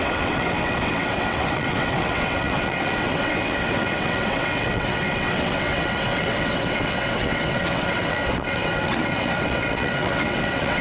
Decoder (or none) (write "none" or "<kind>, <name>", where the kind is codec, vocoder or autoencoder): vocoder, WaveNeXt